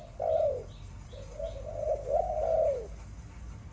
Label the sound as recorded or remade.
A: recorded